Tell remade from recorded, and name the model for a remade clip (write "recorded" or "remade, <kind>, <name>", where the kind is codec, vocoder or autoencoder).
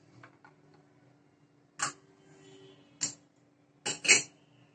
recorded